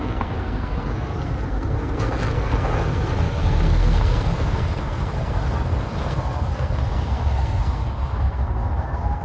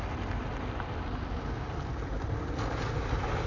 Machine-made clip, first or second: first